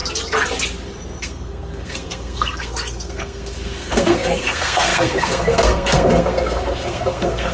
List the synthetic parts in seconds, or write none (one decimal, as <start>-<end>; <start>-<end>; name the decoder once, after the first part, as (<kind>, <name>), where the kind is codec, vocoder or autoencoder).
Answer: 1.2-7.5 (codec, SNAC)